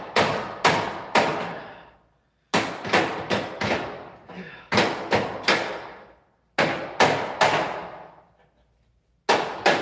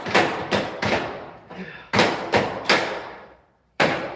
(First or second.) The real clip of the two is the first